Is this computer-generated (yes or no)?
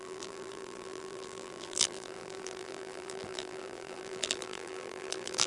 yes